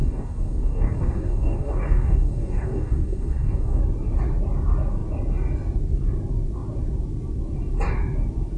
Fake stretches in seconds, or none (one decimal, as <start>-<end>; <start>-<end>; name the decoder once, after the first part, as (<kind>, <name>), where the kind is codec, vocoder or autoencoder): 0.0-3.8 (codec, DAC)